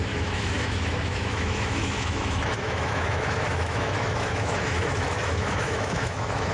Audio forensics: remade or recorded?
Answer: remade